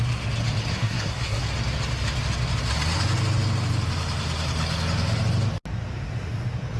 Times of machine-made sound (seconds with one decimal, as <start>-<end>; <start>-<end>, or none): 0.7-1.4